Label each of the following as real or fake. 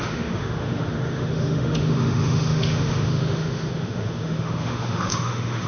fake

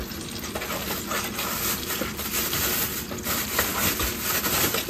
real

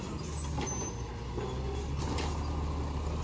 real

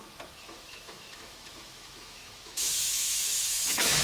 fake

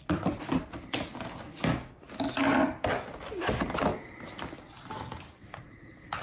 real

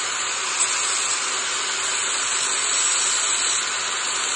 real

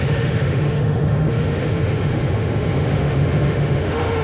fake